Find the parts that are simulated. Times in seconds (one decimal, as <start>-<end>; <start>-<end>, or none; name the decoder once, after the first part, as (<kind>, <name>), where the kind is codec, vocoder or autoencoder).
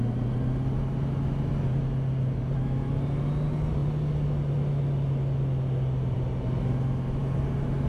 none